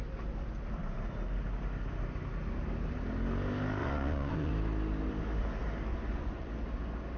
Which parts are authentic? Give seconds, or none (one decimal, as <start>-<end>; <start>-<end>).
0.0-3.8; 4.5-5.9; 6.5-7.2